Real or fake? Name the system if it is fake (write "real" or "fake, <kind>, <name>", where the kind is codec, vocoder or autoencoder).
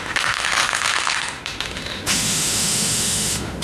fake, autoencoder, DAC-VAE